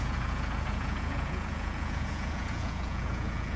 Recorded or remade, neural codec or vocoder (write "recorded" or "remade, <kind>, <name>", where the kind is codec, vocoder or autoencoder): remade, vocoder, Vocos